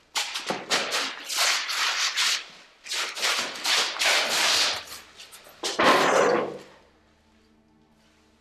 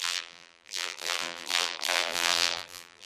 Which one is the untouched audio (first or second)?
first